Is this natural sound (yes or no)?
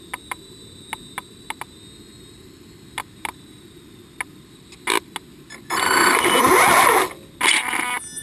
yes